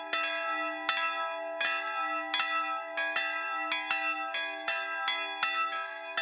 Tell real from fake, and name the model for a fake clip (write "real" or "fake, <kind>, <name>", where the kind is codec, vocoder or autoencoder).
real